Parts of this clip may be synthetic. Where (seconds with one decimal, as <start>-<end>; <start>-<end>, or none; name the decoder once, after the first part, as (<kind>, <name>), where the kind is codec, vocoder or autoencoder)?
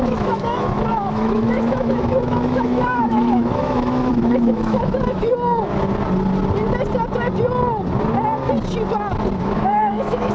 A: 0.0-5.3 (autoencoder, DAC-VAE); 9.4-10.3